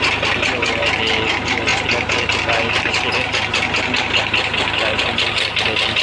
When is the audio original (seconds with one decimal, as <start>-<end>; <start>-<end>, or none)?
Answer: 0.0-6.0